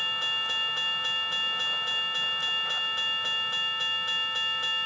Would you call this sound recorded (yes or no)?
yes